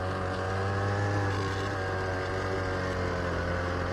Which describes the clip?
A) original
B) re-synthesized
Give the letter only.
A